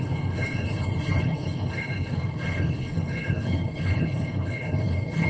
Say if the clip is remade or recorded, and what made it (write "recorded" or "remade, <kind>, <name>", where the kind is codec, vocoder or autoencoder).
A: remade, codec, HILCodec